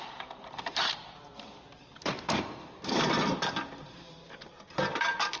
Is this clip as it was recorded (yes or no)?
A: no